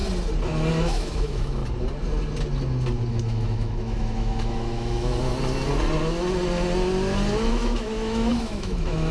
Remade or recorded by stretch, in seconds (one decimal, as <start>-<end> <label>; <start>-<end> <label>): 0.0-0.7 recorded; 0.7-1.6 remade; 1.6-3.1 recorded; 3.1-5.3 remade; 5.3-7.5 recorded; 7.5-9.1 remade